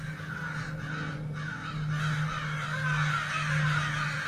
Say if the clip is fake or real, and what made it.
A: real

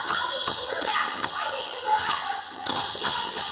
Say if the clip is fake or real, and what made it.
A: fake, vocoder, HiFi-GAN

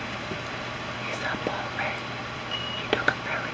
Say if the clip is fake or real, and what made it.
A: real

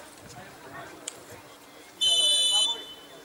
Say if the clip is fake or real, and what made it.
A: fake, vocoder, BigVGAN v2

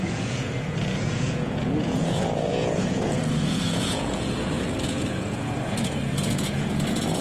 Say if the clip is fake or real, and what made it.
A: fake, vocoder, Vocos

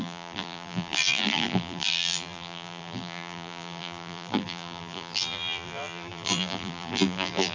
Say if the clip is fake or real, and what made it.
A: fake, vocoder, BigVGAN v2